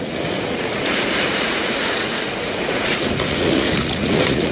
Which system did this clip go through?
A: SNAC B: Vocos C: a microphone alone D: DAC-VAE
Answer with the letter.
B